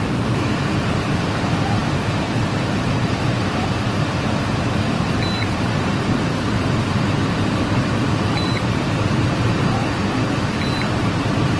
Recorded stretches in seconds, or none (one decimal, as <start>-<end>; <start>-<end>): none